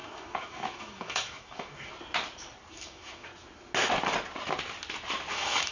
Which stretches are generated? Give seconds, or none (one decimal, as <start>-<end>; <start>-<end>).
0.0-1.9; 2.7-3.3; 5.3-5.7